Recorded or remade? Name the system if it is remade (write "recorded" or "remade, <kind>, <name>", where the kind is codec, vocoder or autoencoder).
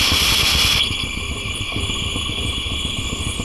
recorded